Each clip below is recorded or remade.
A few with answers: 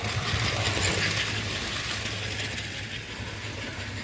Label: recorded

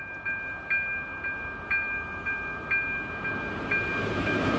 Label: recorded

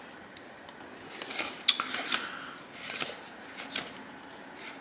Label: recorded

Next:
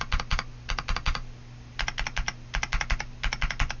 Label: recorded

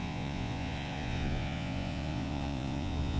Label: remade